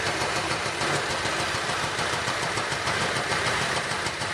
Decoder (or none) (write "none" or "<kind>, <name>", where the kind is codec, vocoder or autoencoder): vocoder, BigVGAN v2